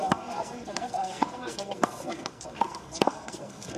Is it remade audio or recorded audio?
remade